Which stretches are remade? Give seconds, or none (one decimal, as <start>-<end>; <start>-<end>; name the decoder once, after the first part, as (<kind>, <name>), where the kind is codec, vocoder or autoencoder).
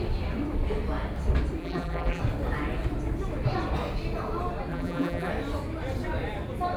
1.6-2.2 (vocoder, BigVGAN v2); 4.7-5.3